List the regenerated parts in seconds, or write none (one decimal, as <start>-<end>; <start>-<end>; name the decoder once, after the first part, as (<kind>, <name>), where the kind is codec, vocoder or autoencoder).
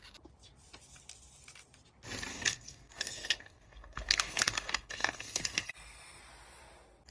2.3-6.2 (codec, SNAC)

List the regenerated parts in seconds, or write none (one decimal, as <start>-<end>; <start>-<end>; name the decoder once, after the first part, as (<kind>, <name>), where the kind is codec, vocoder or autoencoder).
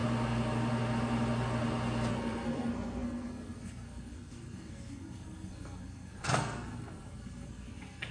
2.1-8.1 (codec, SNAC)